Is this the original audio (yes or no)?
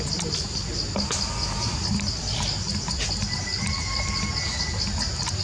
yes